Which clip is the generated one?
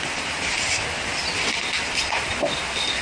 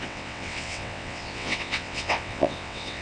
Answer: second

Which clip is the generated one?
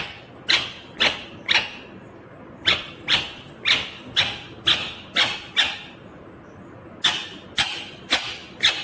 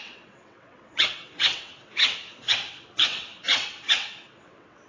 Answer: second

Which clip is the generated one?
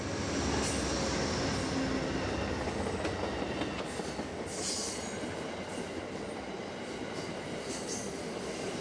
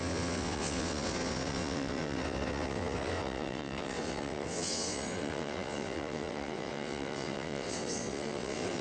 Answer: second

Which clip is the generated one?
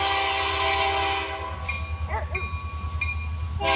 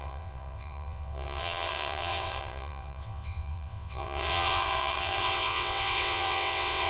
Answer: second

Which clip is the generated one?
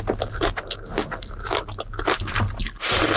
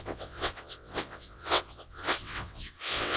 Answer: second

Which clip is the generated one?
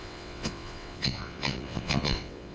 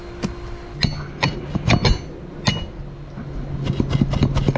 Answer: first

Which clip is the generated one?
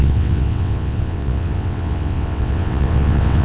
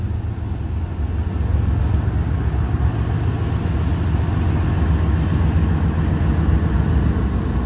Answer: first